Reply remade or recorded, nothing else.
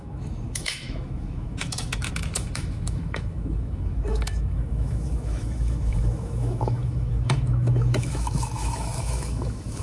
remade